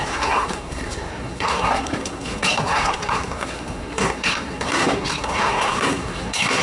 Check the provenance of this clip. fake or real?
fake